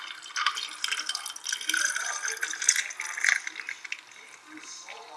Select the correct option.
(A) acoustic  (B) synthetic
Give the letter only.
A